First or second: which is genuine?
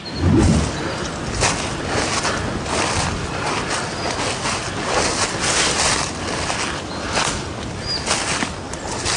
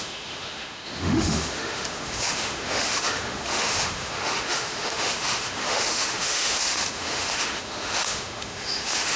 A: first